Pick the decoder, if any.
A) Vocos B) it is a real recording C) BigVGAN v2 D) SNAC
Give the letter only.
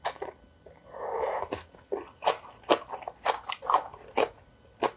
B